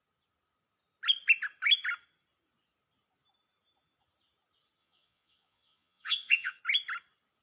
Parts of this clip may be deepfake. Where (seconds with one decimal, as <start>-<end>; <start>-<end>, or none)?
4.8-6.6